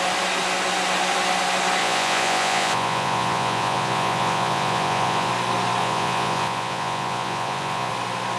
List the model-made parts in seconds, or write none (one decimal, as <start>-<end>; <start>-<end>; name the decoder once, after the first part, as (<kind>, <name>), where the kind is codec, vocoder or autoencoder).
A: 1.8-5.3 (vocoder, Vocos); 5.8-7.9